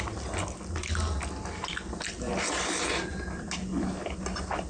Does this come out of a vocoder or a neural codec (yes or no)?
no